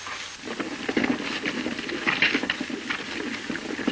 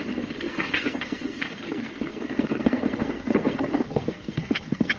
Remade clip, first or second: second